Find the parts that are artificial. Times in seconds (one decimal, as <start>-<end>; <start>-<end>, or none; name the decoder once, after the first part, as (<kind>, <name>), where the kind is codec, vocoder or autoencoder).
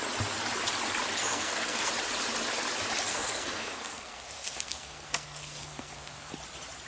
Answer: 1.2-1.9 (codec, SNAC); 3.1-6.3